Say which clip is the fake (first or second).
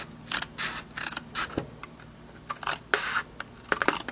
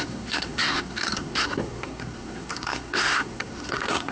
second